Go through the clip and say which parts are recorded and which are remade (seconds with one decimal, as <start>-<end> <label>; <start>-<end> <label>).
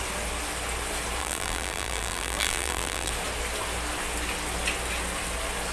0.0-1.2 recorded; 1.2-3.1 remade; 3.1-5.7 recorded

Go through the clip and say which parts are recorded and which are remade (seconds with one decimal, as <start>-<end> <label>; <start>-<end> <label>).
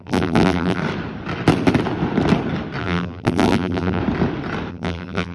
0.0-0.8 remade; 0.8-2.8 recorded; 2.8-4.0 remade; 4.0-4.7 recorded; 4.7-5.3 remade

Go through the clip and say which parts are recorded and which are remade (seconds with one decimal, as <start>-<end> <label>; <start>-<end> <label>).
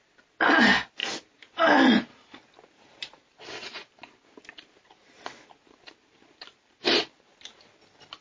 0.0-1.0 recorded; 1.0-3.4 remade; 3.4-3.8 recorded; 3.8-7.0 remade; 7.0-8.2 recorded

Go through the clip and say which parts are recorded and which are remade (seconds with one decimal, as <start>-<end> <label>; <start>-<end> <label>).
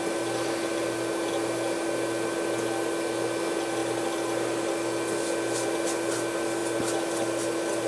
0.0-3.8 recorded; 3.8-4.7 remade; 4.7-6.6 recorded; 6.6-7.9 remade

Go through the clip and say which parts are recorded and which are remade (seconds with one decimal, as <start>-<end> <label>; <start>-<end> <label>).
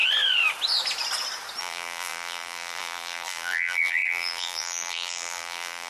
0.0-1.6 recorded; 1.6-5.9 remade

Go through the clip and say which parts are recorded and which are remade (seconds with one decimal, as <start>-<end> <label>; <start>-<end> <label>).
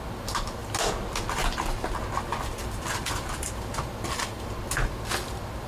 0.0-2.6 recorded; 2.6-4.5 remade; 4.5-5.7 recorded